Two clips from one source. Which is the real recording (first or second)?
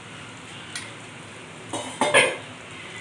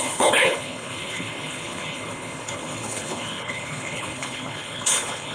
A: first